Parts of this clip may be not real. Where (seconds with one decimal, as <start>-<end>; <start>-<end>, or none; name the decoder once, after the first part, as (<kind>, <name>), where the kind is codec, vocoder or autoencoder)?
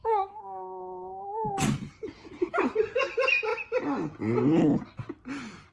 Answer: 0.0-1.6 (autoencoder, DAC-VAE)